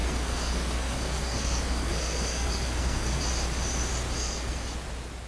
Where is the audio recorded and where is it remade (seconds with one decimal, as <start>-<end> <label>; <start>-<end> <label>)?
0.0-3.2 remade; 3.2-4.2 recorded; 4.2-4.7 remade; 4.7-5.3 recorded